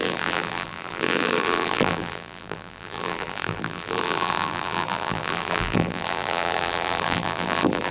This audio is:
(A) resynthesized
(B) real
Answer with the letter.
A